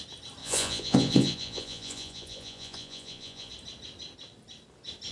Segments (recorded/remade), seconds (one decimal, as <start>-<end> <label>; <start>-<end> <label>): 0.0-0.4 recorded; 0.4-3.5 remade; 3.5-5.1 recorded